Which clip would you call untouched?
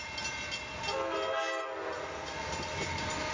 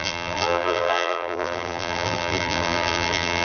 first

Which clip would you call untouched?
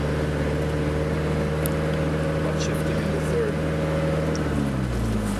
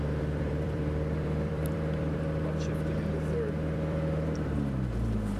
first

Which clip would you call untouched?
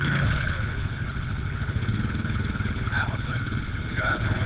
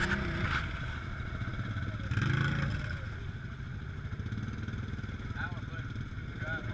second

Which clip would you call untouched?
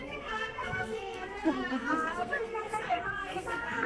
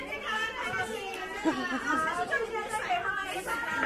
second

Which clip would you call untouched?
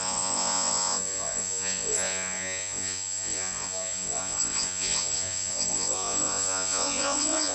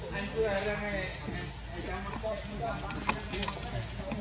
second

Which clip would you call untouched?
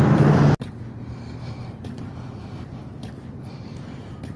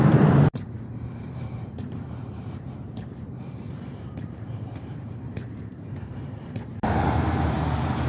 first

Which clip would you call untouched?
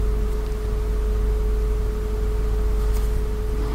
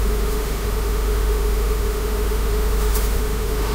first